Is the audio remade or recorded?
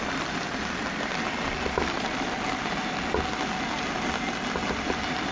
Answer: recorded